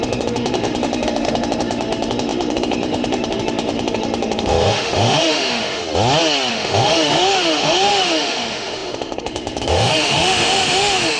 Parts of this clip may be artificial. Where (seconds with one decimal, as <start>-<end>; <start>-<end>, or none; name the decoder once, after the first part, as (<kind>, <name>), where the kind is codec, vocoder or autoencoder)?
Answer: 0.0-5.8 (autoencoder, DAC-VAE); 6.5-11.2